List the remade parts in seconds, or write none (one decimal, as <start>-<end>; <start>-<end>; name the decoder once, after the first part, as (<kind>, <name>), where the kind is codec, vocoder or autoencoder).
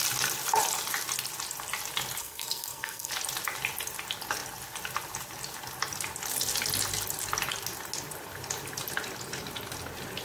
2.2-3.1 (codec, SNAC)